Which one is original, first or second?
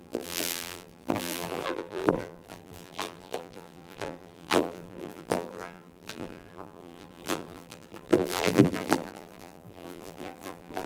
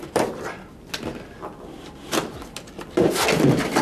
second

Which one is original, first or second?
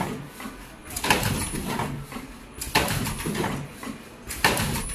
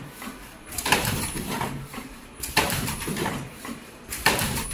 first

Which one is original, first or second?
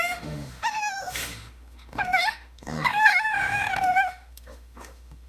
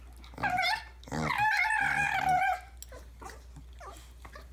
second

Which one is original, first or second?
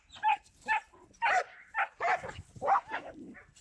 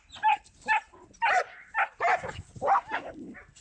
second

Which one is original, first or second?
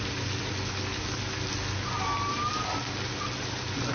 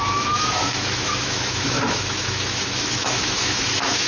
first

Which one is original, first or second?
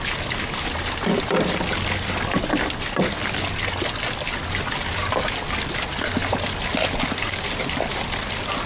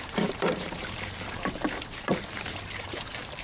first